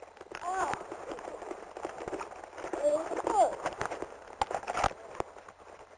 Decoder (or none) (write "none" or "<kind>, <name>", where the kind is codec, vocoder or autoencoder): none